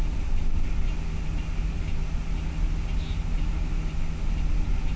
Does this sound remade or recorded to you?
recorded